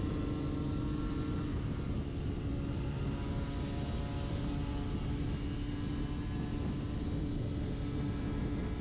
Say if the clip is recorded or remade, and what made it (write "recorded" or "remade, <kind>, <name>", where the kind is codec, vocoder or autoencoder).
recorded